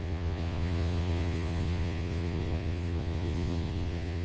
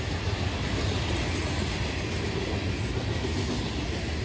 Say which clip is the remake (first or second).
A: first